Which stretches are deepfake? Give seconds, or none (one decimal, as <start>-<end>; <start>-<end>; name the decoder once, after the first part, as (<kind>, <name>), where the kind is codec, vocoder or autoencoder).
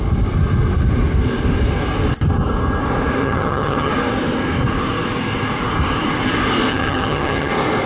3.2-3.9 (vocoder, HiFi-GAN); 6.7-7.5